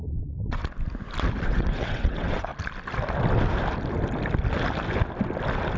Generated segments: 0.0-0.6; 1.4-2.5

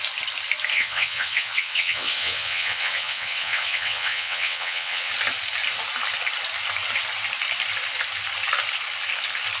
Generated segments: 0.7-5.1